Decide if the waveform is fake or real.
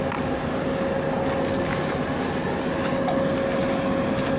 real